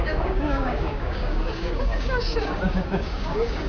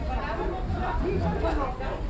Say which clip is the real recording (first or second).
second